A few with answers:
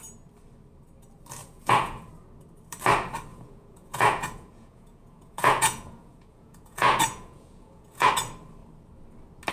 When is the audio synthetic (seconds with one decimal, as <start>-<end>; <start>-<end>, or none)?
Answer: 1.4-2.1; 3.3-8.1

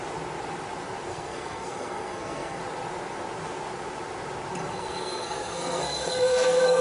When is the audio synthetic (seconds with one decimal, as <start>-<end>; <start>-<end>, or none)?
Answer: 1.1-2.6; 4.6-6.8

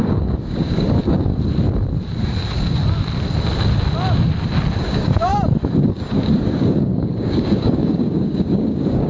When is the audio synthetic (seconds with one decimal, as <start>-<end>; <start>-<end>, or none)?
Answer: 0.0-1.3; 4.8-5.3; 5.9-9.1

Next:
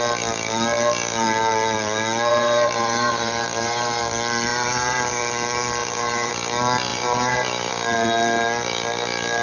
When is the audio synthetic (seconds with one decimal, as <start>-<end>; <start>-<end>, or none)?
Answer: 2.3-4.0; 4.5-5.2; 5.8-6.3; 6.9-7.7